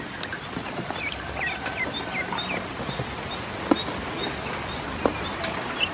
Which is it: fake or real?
real